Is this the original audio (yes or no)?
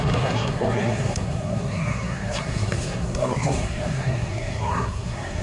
no